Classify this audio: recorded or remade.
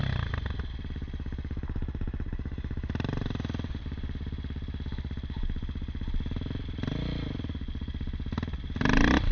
recorded